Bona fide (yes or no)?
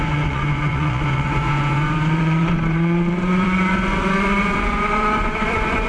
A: no